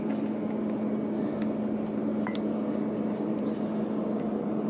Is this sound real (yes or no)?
yes